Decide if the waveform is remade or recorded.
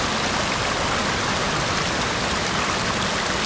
recorded